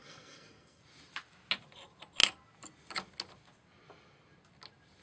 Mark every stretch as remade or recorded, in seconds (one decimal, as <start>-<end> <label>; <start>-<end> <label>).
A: 0.0-0.8 remade; 0.8-5.0 recorded